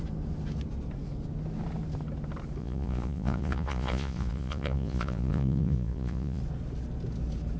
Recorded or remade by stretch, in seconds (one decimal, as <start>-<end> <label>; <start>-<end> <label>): 0.0-2.6 recorded; 2.6-6.4 remade; 6.4-7.6 recorded